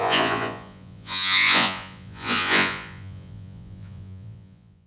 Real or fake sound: fake